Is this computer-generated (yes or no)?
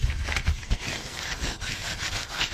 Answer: yes